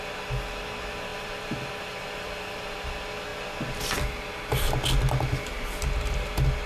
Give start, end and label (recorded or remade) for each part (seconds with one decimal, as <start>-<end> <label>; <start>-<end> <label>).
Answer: 0.0-1.1 recorded; 1.1-2.9 remade; 2.9-6.7 recorded